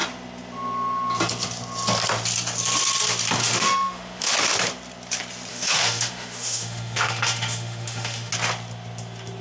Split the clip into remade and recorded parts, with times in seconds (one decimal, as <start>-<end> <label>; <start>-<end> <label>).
0.0-3.4 recorded; 3.4-4.3 remade; 4.3-5.5 recorded; 5.5-8.3 remade; 8.3-9.4 recorded